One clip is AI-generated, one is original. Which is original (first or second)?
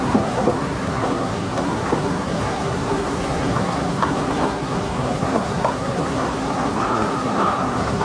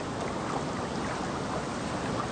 second